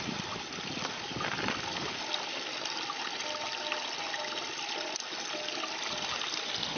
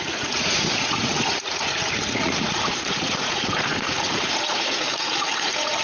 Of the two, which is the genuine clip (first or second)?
first